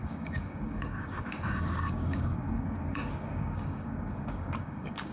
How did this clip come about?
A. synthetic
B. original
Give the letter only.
A